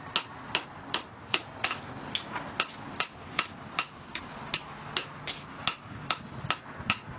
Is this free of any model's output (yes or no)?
yes